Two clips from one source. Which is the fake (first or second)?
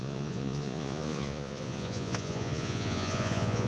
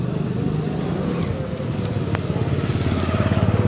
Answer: first